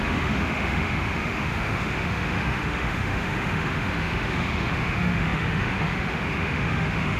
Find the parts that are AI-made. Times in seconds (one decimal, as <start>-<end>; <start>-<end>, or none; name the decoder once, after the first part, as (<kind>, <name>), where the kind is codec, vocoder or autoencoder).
0.0-7.2 (autoencoder, DAC-VAE)